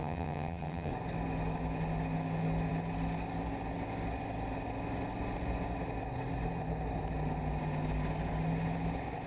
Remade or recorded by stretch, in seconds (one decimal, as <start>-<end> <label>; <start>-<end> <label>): 0.0-0.9 remade; 0.9-9.3 recorded